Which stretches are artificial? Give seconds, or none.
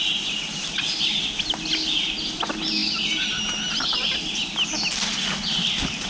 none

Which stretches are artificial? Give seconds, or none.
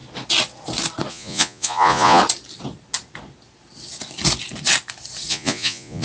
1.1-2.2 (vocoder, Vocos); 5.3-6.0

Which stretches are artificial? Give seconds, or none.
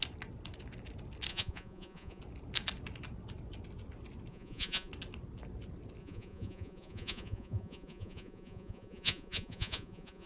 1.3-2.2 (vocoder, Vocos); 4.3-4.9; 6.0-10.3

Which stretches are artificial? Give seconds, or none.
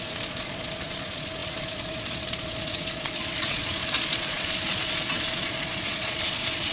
0.0-6.7 (vocoder, Vocos)